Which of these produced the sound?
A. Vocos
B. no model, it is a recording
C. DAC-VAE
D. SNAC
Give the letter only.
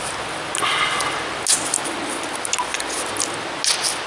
B